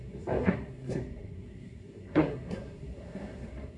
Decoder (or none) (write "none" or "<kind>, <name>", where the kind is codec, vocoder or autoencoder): codec, SNAC